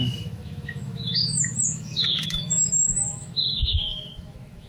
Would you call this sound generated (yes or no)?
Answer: yes